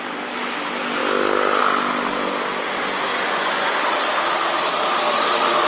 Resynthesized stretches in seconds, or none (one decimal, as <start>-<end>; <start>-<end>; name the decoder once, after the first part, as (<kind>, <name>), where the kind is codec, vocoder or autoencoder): 3.1-3.7 (vocoder, Vocos)